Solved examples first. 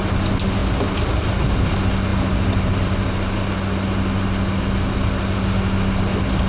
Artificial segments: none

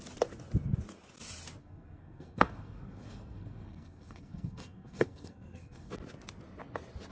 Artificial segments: 1.6-5.9 (codec, SNAC)

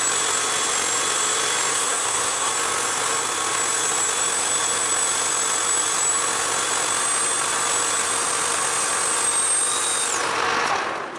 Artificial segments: 1.7-2.5 (codec, SNAC)

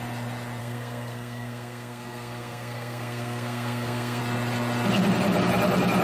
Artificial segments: 0.6-4.2 (codec, SNAC)

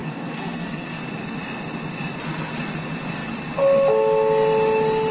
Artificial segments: 0.0-1.0 (codec, SNAC)

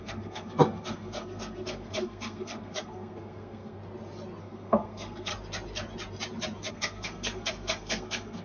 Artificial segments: 0.0-3.8 (codec, SNAC); 4.4-5.3; 6.7-8.4